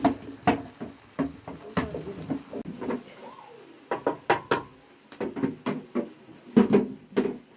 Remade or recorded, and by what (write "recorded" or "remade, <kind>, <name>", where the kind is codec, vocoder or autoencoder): recorded